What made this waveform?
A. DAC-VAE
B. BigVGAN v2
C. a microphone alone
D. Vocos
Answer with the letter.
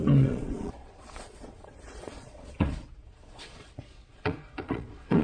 D